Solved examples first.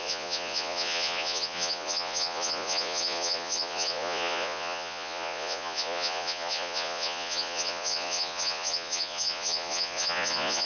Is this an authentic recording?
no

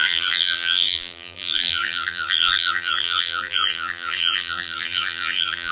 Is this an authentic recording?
no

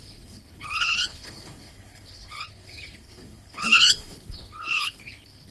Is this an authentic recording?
no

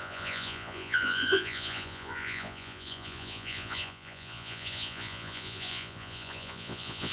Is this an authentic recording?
no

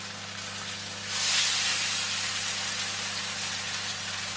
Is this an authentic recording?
yes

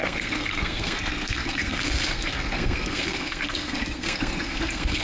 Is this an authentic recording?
no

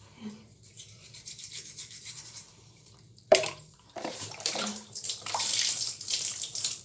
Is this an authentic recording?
no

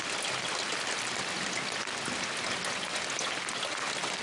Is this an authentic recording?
yes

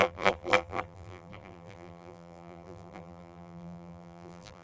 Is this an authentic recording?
no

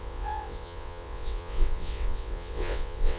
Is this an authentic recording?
no